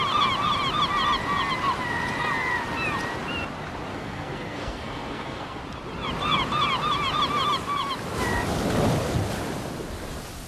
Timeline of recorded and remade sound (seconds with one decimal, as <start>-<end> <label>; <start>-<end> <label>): 0.0-3.9 recorded; 3.9-5.6 remade; 5.6-10.5 recorded